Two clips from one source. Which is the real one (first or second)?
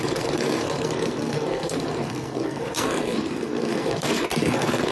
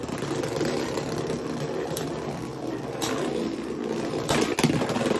second